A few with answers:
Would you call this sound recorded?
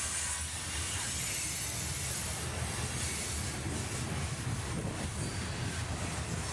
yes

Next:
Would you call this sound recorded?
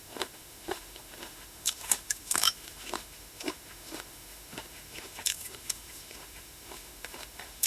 no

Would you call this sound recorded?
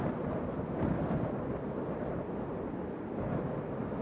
yes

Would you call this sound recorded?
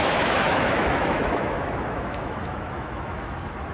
no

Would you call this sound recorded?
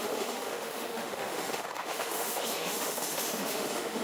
no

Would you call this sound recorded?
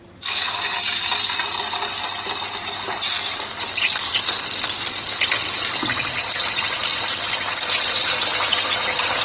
yes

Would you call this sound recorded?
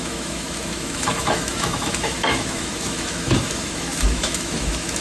no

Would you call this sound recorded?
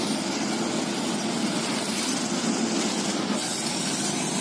yes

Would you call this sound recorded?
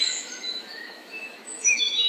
no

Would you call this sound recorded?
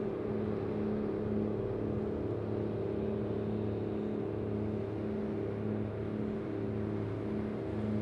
yes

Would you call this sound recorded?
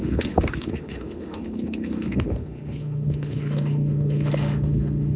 no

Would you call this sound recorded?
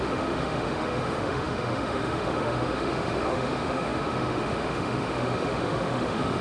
no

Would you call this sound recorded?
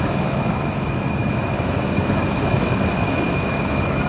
no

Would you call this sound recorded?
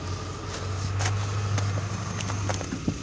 yes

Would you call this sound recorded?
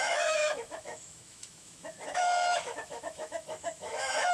no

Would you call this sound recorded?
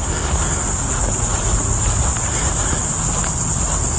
yes